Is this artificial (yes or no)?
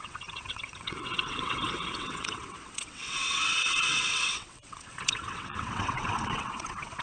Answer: yes